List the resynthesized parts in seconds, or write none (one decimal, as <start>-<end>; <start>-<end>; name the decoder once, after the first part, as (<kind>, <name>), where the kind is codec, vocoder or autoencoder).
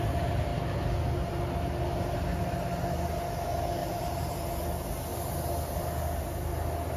3.8-4.6 (vocoder, BigVGAN v2)